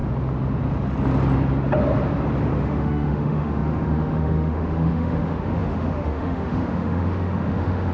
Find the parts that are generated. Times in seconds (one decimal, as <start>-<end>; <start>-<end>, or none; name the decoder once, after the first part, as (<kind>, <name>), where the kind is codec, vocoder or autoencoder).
2.6-7.9 (autoencoder, DAC-VAE)